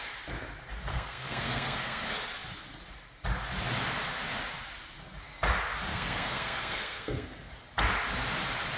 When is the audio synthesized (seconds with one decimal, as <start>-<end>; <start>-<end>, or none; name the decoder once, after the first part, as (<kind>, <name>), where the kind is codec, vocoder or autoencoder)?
0.9-2.0 (codec, SNAC); 5.9-7.5